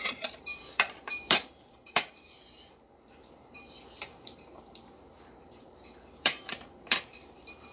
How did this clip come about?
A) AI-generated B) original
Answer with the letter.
A